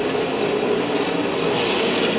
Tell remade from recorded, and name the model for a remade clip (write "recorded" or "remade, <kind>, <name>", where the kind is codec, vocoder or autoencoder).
recorded